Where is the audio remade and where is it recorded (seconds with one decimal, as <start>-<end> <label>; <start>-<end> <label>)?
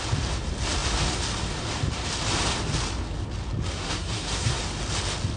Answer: 0.0-3.7 recorded; 3.7-4.6 remade; 4.6-5.4 recorded